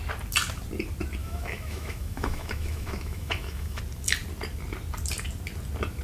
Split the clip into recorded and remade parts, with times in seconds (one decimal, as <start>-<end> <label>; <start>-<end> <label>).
0.0-1.2 recorded; 1.2-3.8 remade; 3.8-6.0 recorded